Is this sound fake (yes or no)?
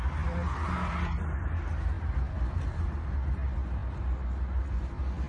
no